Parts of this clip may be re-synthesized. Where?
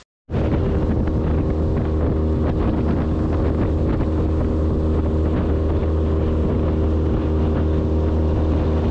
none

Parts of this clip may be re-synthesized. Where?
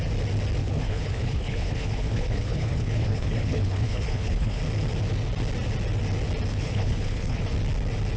0.6-4.6 (codec, HILCodec); 6.5-7.4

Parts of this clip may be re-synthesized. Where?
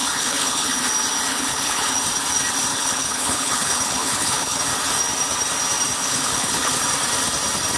0.0-0.8 (codec, HILCodec); 1.3-1.9; 2.7-4.6; 6.0-6.7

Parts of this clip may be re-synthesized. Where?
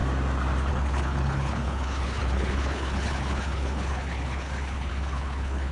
0.7-5.7 (codec, HILCodec)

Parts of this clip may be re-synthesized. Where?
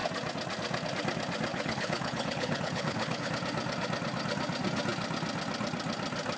1.5-3.3 (codec, HILCodec)